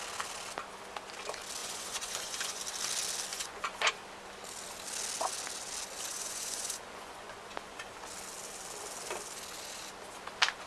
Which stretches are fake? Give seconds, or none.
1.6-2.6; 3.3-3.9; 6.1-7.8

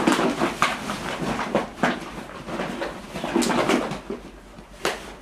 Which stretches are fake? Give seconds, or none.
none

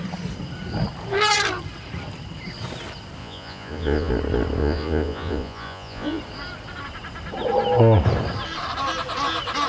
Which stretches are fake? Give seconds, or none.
3.2-4.1; 4.6-6.2

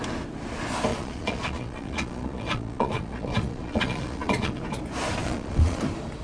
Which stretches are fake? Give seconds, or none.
0.9-4.6; 5.2-5.8

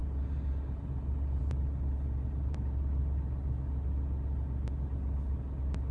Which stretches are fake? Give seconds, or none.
none